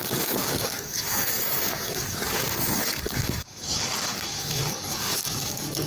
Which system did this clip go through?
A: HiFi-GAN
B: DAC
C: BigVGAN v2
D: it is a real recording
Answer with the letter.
B